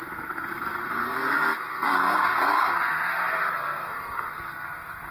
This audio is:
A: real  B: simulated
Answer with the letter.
B